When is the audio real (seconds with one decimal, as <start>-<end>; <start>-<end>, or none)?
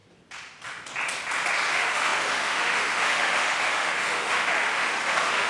0.0-1.7